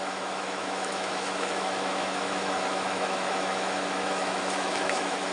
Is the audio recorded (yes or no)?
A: no